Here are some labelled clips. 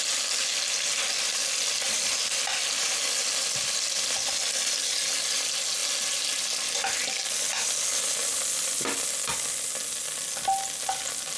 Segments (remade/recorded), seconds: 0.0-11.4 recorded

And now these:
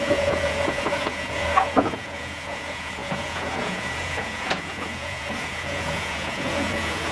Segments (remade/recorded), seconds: 0.0-7.1 remade

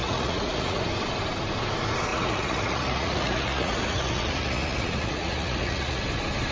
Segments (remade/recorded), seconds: 0.0-0.8 remade; 0.8-2.1 recorded; 2.1-6.0 remade; 6.0-6.5 recorded

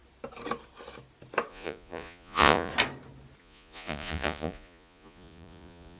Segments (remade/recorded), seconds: 0.0-1.5 recorded; 1.5-2.7 remade; 2.7-3.4 recorded; 3.4-6.0 remade